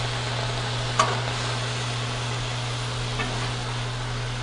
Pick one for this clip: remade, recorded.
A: recorded